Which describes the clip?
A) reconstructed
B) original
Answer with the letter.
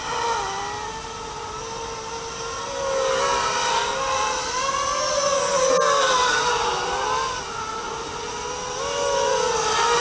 B